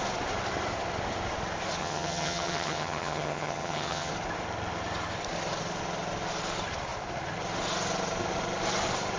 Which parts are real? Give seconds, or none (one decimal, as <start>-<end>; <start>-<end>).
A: 0.0-1.8; 4.1-9.2